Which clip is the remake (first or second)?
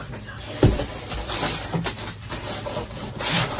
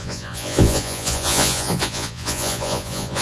second